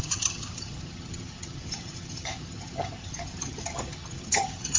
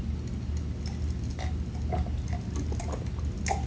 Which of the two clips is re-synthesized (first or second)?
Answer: first